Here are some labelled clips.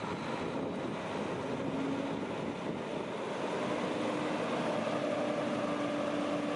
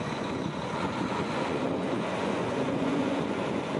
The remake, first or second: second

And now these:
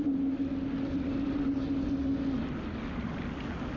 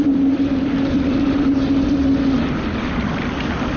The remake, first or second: second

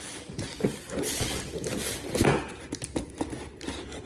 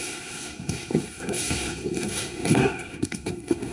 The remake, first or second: second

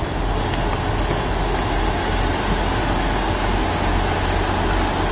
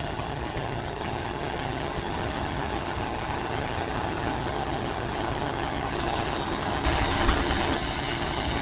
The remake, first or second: second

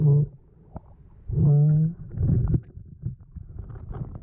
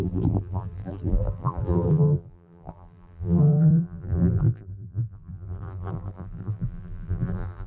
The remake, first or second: second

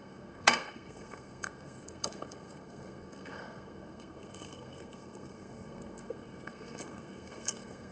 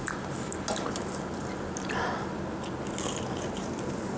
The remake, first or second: first